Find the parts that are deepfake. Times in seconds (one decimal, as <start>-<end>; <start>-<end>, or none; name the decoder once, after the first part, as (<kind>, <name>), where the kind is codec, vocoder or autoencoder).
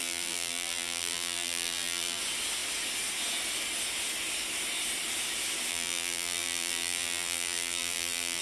0.0-2.2 (vocoder, BigVGAN v2); 5.7-8.4